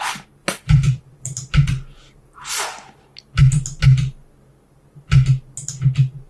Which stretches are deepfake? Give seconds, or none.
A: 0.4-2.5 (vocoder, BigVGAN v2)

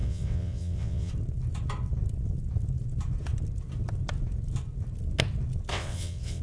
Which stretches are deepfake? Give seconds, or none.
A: 0.0-1.1 (vocoder, WaveNeXt); 5.7-6.4

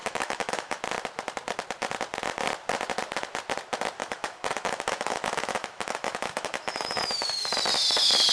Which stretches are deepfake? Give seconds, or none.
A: 0.0-0.8 (autoencoder, DAC-VAE); 4.0-7.1

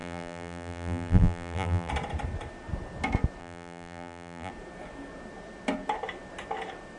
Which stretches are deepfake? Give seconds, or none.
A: 0.0-1.9 (vocoder, BigVGAN v2); 3.4-4.5

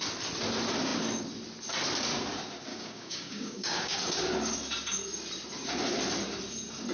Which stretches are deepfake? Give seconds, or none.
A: 2.7-4.0 (codec, DAC)

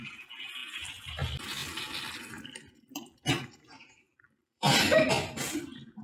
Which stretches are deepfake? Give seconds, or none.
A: 1.6-5.1 (vocoder, BigVGAN v2)